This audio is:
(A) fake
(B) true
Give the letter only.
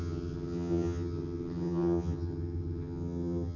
A